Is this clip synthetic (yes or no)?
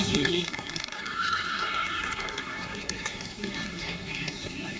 yes